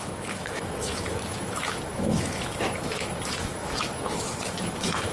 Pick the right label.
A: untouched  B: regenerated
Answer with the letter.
B